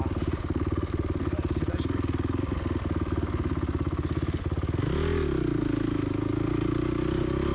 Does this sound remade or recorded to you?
recorded